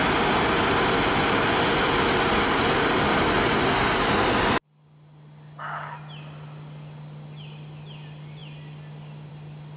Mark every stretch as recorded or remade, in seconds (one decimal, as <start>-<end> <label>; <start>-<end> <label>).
0.0-9.8 recorded